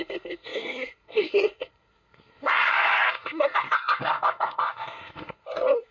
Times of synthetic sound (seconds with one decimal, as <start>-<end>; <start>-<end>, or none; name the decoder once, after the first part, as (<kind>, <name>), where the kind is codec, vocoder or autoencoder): 0.0-5.9 (codec, SNAC)